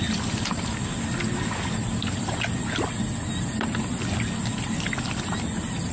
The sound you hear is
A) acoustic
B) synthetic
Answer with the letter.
A